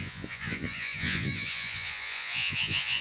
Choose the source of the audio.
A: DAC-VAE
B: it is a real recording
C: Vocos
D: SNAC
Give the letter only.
C